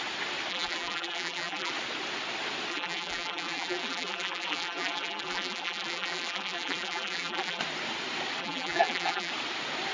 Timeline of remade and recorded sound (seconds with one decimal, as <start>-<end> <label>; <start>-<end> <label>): 0.0-0.5 recorded; 0.5-1.7 remade; 1.7-2.7 recorded; 2.7-7.6 remade; 7.6-8.4 recorded; 8.4-9.3 remade; 9.3-9.9 recorded